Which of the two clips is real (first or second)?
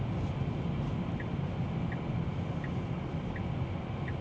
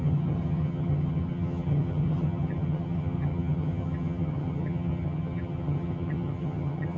first